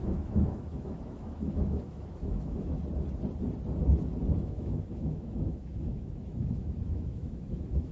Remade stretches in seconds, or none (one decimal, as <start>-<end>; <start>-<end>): 0.0-2.8; 4.3-7.9